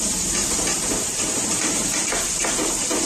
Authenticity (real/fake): fake